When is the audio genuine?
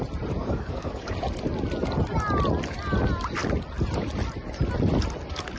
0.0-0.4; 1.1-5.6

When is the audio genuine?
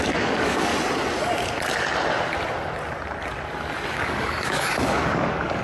0.7-3.9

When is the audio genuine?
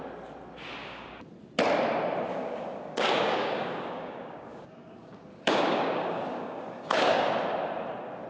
0.0-0.8; 1.3-2.3; 7.3-8.3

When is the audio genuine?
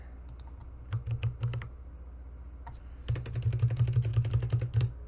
0.0-4.1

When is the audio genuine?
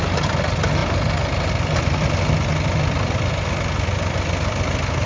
0.0-5.1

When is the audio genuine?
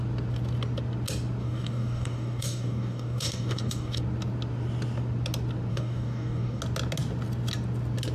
0.0-1.4; 4.0-5.7; 6.6-8.1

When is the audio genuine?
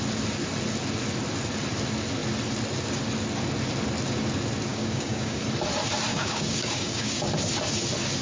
0.0-4.7; 5.4-6.1; 7.2-8.2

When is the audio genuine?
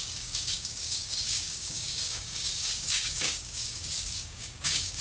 none